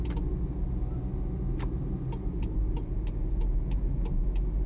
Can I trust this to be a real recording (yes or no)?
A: yes